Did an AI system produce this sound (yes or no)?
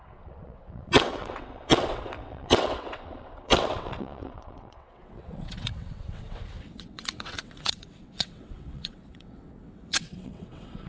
yes